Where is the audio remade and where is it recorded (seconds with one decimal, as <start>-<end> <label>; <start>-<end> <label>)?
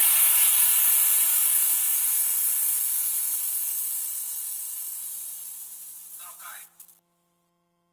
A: 0.0-0.9 remade; 0.9-1.3 recorded; 1.3-2.0 remade; 2.0-3.4 recorded; 3.4-5.0 remade; 5.0-7.9 recorded